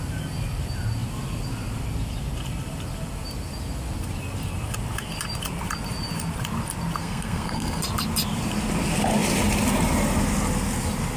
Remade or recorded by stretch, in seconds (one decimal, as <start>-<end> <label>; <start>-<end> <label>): 0.0-7.0 recorded; 7.0-7.8 remade; 7.8-11.2 recorded